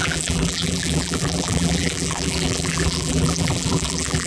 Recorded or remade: remade